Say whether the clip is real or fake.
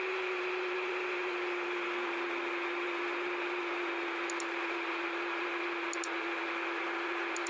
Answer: real